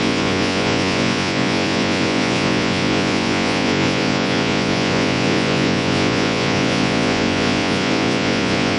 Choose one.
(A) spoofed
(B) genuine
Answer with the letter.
A